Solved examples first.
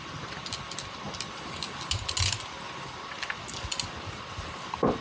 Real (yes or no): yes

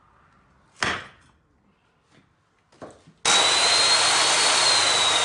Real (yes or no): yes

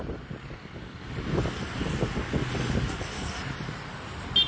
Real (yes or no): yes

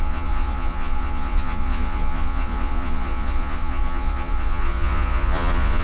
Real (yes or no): no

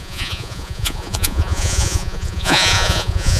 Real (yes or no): no